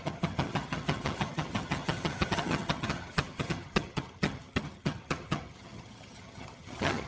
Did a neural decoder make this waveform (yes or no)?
yes